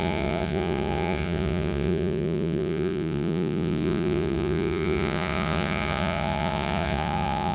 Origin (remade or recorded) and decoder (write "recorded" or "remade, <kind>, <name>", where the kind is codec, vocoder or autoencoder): remade, vocoder, Vocos